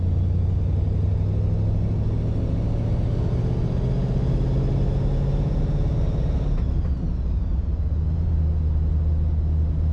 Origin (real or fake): real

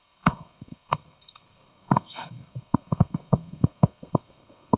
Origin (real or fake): fake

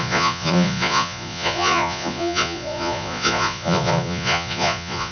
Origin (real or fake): fake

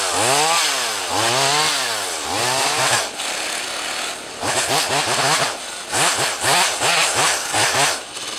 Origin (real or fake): real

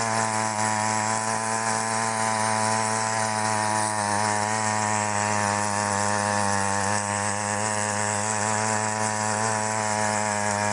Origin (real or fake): real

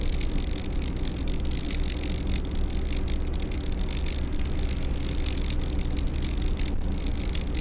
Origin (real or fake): real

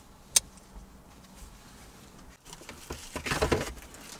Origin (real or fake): real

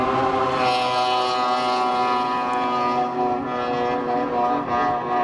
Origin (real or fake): real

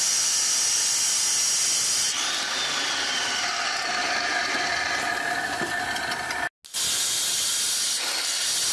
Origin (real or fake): real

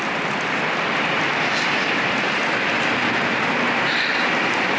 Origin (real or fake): fake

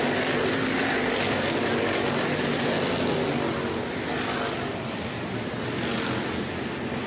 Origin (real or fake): real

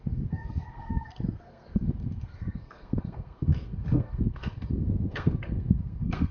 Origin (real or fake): fake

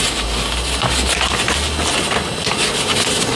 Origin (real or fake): real